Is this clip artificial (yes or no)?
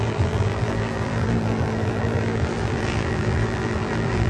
yes